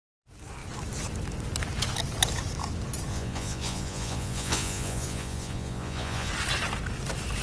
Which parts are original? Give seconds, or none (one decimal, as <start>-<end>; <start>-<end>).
0.0-3.1; 6.3-7.4